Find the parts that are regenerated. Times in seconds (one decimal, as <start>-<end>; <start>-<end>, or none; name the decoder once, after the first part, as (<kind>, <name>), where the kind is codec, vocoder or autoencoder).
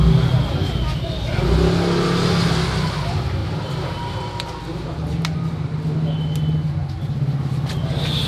3.4-4.6 (vocoder, BigVGAN v2)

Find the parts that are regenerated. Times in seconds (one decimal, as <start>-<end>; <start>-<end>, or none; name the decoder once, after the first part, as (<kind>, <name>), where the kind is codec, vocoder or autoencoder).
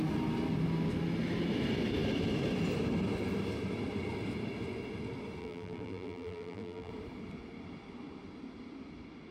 5.4-6.9 (vocoder, BigVGAN v2)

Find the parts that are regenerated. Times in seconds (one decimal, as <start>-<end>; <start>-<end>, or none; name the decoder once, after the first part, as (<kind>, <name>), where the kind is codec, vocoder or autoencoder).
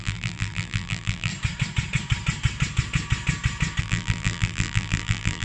0.0-1.3 (vocoder, BigVGAN v2); 3.8-5.4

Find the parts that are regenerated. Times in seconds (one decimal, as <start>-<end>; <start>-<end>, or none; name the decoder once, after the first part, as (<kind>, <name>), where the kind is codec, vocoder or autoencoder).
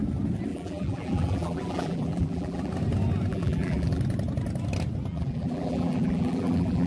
0.5-2.7 (vocoder, BigVGAN v2); 3.3-4.0; 5.1-6.9